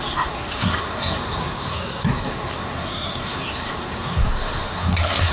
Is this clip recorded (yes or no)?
no